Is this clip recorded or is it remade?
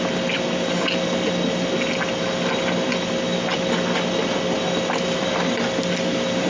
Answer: recorded